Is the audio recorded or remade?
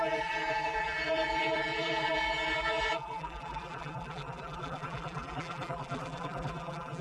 remade